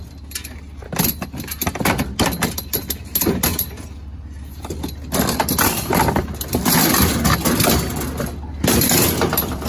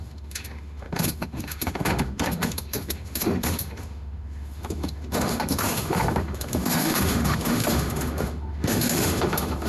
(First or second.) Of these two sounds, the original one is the first